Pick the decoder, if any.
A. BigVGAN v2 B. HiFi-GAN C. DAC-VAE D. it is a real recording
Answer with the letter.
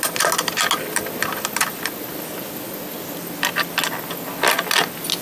D